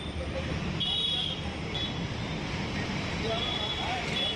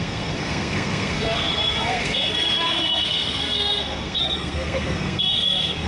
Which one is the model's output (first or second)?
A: second